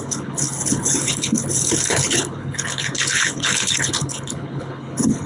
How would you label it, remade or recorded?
remade